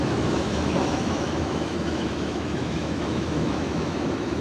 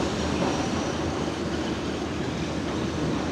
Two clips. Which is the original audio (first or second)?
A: second